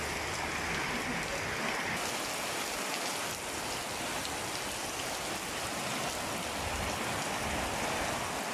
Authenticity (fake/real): real